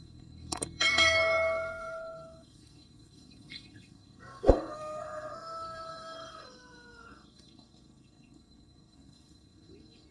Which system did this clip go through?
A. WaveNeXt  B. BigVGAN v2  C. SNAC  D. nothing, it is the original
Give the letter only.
C